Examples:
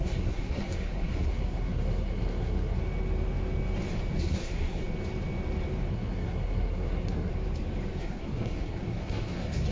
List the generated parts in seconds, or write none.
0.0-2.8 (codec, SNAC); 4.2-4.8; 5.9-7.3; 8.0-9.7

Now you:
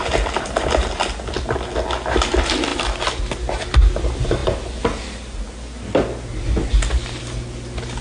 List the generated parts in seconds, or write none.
none

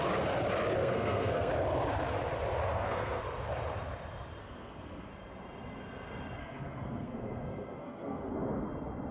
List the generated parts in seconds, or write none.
0.8-1.5 (codec, SNAC); 2.7-3.2; 4.4-5.1; 6.4-8.3

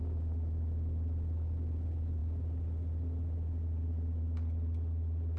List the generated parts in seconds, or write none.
none

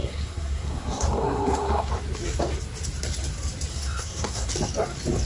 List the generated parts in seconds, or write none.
0.0-1.9 (codec, SNAC); 3.7-4.5

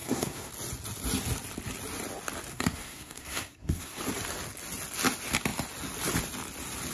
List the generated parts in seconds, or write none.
0.0-0.5 (codec, SNAC); 2.5-4.0

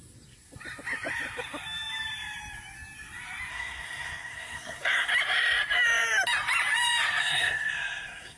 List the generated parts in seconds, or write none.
3.5-5.1 (codec, SNAC); 7.2-8.4